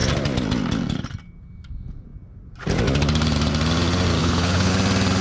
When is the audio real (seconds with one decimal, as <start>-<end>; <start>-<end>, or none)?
0.0-4.2; 4.7-5.2